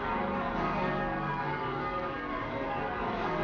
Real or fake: fake